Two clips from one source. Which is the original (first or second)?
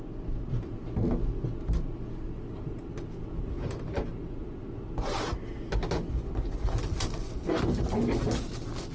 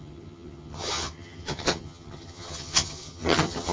first